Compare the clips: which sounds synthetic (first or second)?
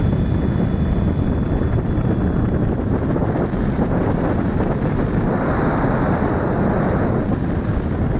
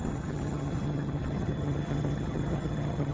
second